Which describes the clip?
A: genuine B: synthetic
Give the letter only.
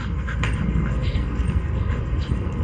B